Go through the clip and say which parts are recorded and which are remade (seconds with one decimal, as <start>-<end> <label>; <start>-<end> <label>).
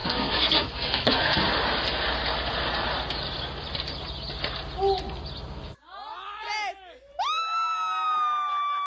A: 0.0-1.4 remade; 1.4-8.9 recorded